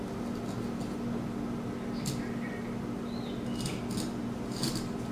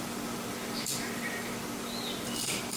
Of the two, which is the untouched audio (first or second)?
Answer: first